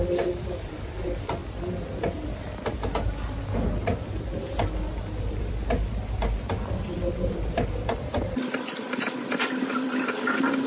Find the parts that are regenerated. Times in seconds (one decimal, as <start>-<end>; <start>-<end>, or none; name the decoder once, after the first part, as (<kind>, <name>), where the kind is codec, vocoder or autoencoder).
0.0-1.4 (vocoder, BigVGAN v2); 5.4-10.7